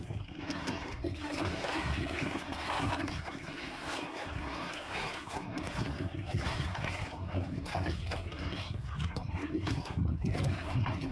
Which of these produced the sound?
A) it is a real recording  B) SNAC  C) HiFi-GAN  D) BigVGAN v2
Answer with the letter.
B